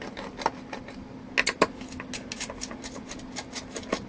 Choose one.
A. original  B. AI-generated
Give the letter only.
A